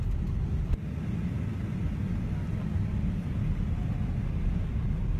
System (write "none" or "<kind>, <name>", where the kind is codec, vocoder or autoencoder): none